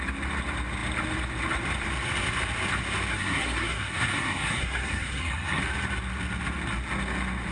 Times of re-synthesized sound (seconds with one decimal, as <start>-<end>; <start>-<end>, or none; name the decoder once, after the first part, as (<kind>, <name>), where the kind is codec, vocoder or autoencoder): 3.1-5.6 (codec, SNAC)